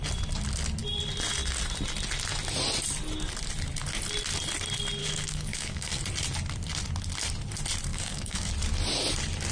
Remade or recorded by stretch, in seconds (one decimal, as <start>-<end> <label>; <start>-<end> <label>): 0.0-5.0 recorded; 5.0-6.0 remade; 6.0-7.9 recorded; 7.9-8.5 remade; 8.5-9.5 recorded